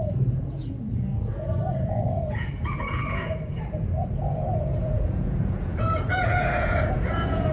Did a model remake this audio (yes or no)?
yes